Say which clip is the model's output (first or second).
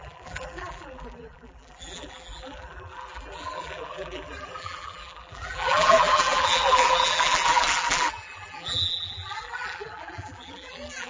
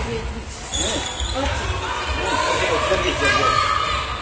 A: first